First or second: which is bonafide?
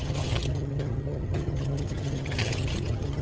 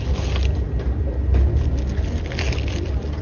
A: second